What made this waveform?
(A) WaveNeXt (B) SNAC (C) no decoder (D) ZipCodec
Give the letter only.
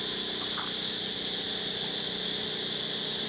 C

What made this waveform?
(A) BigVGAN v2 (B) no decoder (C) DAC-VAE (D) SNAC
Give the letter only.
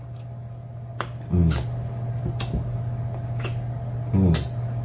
B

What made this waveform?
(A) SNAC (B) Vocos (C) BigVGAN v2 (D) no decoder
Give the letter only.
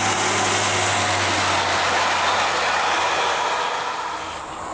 D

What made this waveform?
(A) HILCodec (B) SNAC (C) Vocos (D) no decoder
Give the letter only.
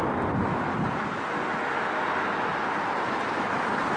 D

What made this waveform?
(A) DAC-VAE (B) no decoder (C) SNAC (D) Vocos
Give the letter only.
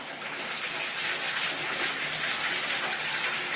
B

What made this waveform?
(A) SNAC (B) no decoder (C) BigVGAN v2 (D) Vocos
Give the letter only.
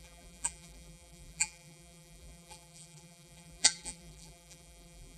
C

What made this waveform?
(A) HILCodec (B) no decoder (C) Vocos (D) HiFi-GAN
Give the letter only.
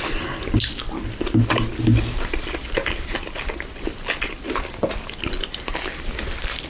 B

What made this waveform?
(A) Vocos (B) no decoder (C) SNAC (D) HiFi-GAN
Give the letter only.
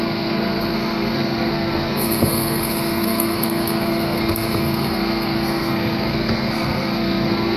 C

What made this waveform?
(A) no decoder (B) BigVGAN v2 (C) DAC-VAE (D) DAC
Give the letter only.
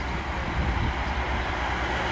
A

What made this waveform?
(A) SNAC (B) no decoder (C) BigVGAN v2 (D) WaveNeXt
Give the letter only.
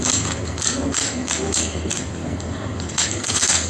A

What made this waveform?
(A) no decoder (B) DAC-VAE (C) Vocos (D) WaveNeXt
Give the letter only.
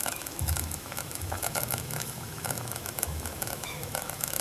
B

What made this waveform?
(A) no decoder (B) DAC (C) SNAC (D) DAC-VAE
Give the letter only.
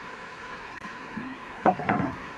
C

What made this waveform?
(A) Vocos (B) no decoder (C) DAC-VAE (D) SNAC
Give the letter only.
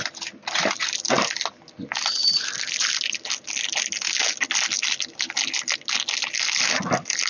B